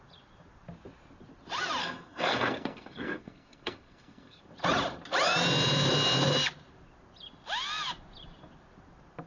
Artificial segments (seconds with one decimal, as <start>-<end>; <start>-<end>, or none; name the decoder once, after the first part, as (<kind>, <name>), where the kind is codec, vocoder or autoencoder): 1.8-4.4 (codec, SNAC)